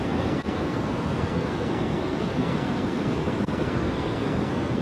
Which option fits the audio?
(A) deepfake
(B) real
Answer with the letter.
A